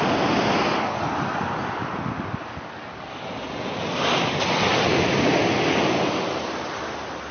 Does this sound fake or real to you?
real